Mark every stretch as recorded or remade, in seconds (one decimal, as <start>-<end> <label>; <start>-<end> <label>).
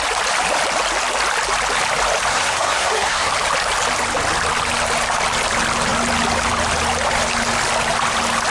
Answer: 0.0-2.3 recorded; 2.3-3.3 remade; 3.3-8.5 recorded